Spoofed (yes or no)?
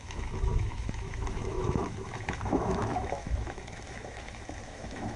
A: yes